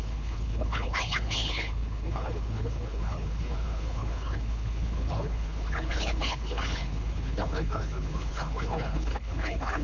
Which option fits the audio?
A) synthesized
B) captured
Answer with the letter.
A